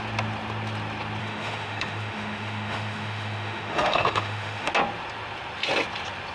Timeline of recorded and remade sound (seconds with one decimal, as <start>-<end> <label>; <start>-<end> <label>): 0.0-1.2 recorded; 1.2-4.7 remade; 4.7-6.3 recorded